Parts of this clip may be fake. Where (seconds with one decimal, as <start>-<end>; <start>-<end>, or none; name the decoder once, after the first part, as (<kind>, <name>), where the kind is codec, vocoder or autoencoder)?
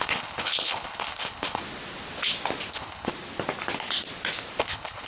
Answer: 0.0-1.6 (codec, HILCodec); 2.7-3.1; 4.6-5.1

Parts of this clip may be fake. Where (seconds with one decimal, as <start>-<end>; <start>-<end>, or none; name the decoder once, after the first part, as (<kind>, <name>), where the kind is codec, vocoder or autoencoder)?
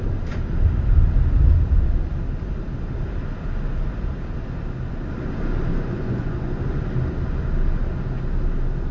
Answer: 5.7-6.6 (vocoder, Vocos)